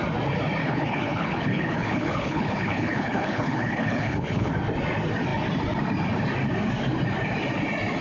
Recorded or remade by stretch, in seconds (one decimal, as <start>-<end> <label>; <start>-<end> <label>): 0.0-0.6 recorded; 0.6-4.5 remade; 4.5-8.0 recorded